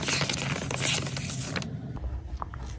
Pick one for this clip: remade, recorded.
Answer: recorded